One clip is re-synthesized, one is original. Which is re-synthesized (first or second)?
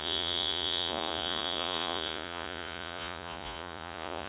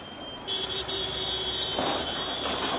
first